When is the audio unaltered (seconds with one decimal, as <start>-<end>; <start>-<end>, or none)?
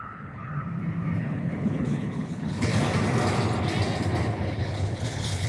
0.5-1.2; 2.7-4.3